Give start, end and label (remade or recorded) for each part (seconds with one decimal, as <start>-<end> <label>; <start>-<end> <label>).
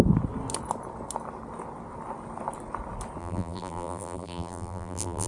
0.0-3.2 recorded; 3.2-5.3 remade